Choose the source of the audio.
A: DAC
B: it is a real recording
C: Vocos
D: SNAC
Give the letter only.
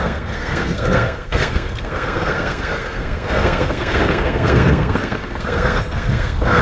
D